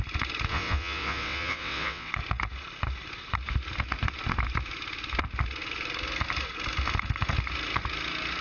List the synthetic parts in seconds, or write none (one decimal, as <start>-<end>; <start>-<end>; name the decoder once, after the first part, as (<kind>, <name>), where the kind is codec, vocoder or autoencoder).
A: 0.5-2.1 (vocoder, WaveNeXt)